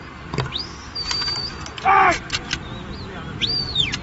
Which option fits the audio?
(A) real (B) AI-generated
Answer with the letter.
A